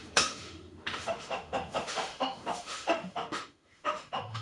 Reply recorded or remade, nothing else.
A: remade